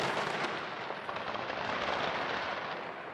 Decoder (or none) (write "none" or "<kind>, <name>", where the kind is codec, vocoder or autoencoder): none